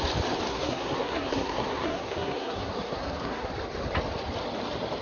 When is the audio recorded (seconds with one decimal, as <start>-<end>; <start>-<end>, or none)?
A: 0.0-0.5; 3.5-5.0